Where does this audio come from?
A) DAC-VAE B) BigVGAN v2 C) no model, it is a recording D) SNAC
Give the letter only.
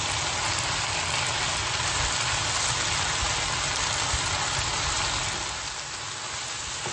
C